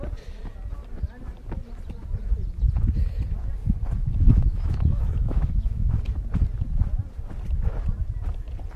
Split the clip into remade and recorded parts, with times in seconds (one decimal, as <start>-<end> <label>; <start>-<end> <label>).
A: 0.0-4.3 recorded; 4.3-5.9 remade; 5.9-8.8 recorded